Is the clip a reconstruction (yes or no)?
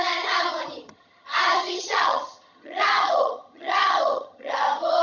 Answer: yes